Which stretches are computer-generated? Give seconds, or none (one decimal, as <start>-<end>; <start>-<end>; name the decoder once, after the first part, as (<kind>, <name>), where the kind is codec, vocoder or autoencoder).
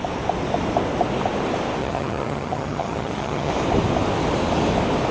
1.8-3.5 (vocoder, HiFi-GAN)